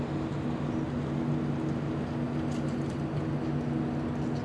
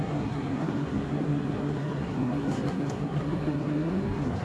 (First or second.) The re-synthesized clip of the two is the second